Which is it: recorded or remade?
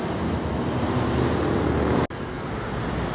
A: recorded